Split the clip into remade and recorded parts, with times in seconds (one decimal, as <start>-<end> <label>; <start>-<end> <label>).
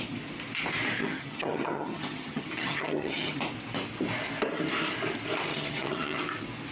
0.0-1.0 recorded; 1.0-3.4 remade; 3.4-5.5 recorded; 5.5-6.2 remade; 6.2-6.7 recorded